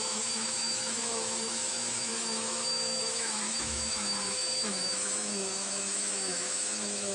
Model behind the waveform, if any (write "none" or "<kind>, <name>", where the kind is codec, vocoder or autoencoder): autoencoder, DAC-VAE